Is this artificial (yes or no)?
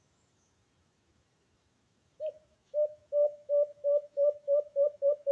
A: yes